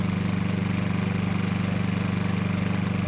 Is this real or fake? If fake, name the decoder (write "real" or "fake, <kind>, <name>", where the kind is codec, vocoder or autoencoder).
real